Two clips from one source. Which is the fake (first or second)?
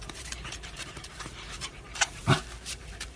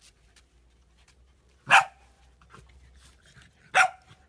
first